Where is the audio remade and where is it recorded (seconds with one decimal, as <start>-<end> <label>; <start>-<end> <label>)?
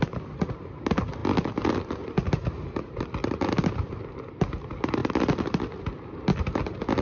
0.0-7.0 recorded